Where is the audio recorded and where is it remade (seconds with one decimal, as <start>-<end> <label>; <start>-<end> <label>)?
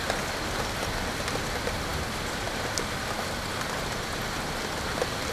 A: 0.0-5.3 recorded